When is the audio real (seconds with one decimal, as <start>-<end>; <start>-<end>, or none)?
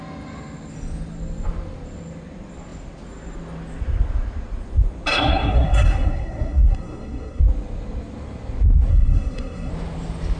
0.0-5.1; 7.4-8.9; 9.7-10.4